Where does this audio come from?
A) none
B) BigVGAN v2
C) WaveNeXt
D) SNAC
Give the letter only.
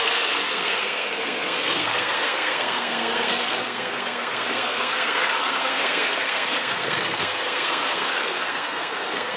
D